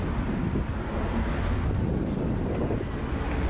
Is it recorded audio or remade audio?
recorded